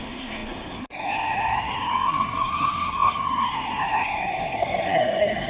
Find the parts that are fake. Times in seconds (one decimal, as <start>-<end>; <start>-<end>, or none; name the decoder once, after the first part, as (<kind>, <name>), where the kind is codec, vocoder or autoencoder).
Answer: 0.0-5.5 (codec, SNAC)